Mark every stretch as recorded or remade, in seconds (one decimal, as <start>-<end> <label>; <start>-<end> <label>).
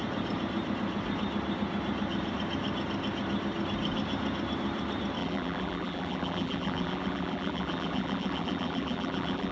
0.0-5.2 recorded; 5.2-9.5 remade